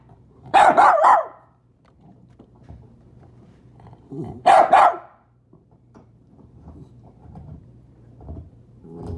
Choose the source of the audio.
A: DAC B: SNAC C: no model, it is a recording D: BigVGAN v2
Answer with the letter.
D